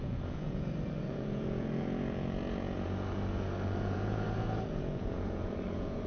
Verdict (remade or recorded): remade